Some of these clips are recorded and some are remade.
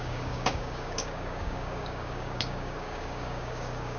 remade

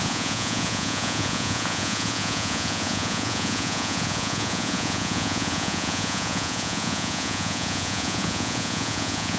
remade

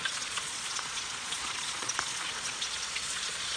remade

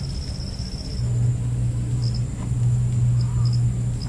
recorded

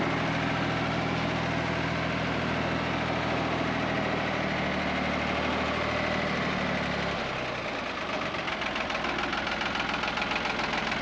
recorded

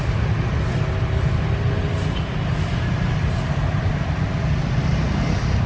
recorded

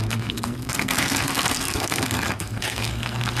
remade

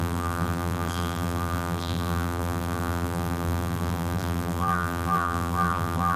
remade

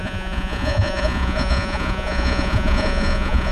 remade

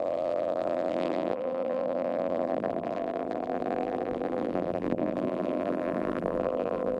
remade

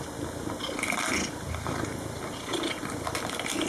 recorded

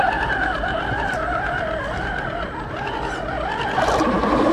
recorded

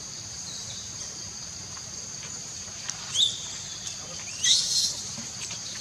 remade